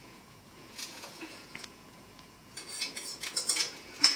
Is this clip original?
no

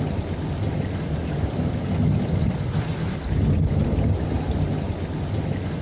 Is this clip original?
yes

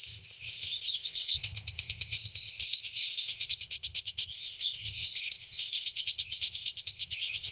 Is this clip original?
no